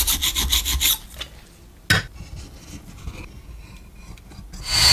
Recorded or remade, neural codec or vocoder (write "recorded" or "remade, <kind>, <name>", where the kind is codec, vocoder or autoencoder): recorded